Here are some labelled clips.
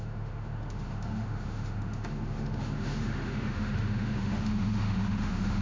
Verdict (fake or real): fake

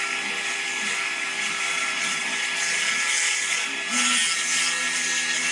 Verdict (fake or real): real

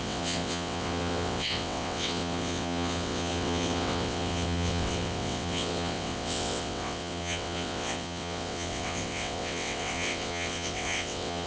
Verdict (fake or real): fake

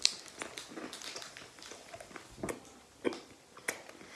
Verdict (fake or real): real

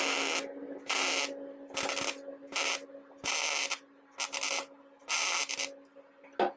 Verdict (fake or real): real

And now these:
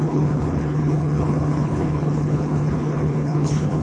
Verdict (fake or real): fake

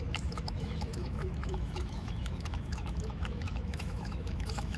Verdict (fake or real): fake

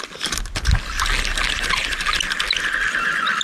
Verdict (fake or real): real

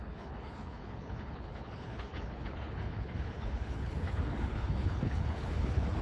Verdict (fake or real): fake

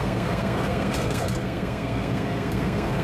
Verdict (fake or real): fake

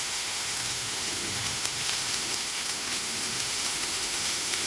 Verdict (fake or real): fake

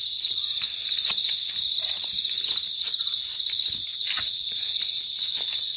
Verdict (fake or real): real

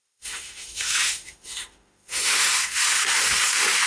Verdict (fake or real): fake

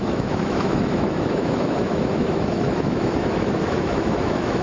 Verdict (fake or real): fake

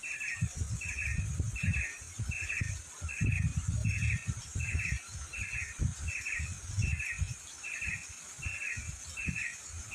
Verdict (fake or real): real